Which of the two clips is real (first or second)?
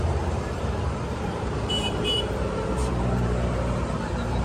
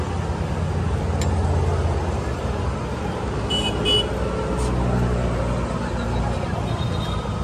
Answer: second